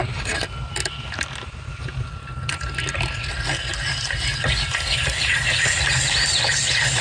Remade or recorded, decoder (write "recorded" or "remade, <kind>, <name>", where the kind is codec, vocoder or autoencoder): recorded